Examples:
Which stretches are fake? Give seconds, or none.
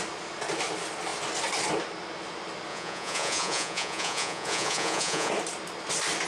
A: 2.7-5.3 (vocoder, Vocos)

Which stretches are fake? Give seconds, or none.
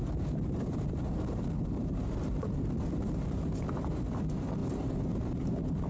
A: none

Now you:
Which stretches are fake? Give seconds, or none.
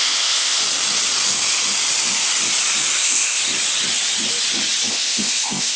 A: 0.0-0.6 (codec, ZipCodec); 3.0-3.4; 4.9-5.8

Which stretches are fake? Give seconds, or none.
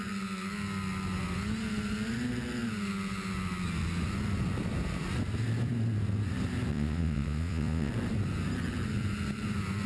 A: 6.7-7.9 (vocoder, Vocos)